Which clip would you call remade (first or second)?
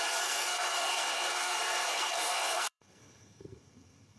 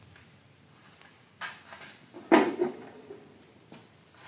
first